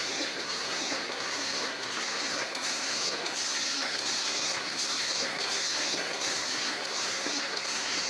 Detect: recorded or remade remade